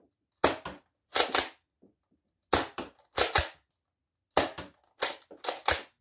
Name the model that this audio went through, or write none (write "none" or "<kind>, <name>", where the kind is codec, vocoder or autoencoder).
none